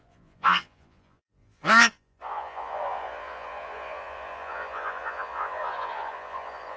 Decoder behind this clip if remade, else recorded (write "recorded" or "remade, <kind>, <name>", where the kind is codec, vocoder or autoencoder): remade, vocoder, Vocos